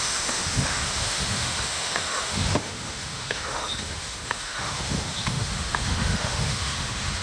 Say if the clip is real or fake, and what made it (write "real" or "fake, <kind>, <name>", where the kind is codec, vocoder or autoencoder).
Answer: fake, autoencoder, DAC-VAE